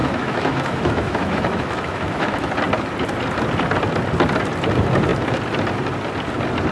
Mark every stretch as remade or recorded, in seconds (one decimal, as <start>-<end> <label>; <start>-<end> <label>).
0.0-2.5 remade; 2.5-6.7 recorded